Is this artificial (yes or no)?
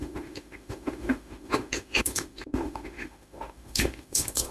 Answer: yes